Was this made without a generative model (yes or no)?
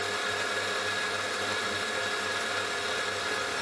yes